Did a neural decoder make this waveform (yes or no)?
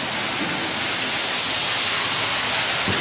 no